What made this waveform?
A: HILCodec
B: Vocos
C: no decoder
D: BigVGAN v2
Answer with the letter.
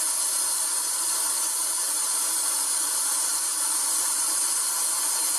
D